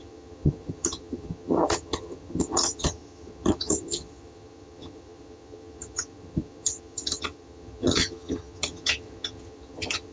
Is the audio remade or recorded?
remade